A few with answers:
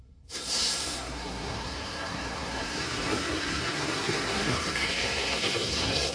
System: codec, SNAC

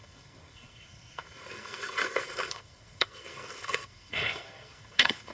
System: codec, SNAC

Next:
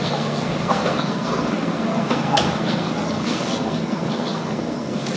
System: codec, SNAC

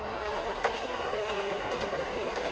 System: codec, SNAC